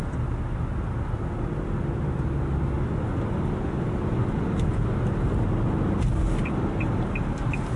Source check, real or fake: real